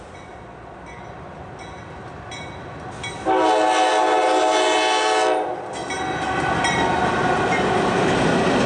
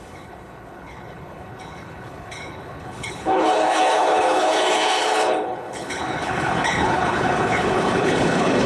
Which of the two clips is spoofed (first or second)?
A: second